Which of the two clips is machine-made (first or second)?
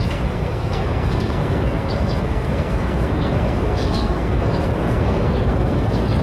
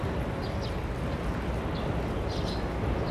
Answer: first